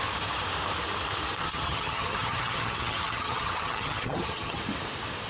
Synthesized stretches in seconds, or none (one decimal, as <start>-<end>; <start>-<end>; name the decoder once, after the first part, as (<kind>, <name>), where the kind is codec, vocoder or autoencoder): 1.4-4.6 (vocoder, HiFi-GAN)